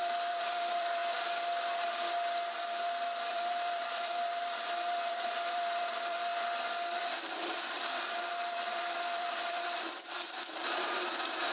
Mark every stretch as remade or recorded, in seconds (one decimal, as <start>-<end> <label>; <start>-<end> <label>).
0.0-1.0 remade; 1.0-3.3 recorded; 3.3-6.3 remade; 6.3-7.0 recorded; 7.0-11.5 remade